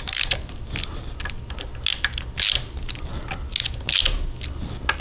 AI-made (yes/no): no